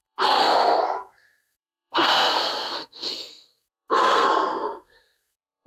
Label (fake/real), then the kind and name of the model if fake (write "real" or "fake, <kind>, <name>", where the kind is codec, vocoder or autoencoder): fake, codec, SNAC